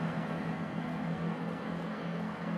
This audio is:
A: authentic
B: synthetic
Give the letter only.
B